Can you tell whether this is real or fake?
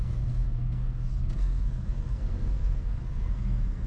fake